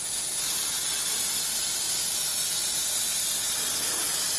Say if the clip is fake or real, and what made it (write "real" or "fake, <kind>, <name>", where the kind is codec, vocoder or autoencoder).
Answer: real